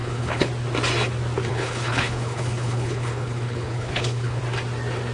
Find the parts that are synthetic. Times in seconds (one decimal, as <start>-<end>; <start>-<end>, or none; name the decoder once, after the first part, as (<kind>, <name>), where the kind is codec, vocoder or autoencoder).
0.0-0.5 (codec, HILCodec); 1.5-4.4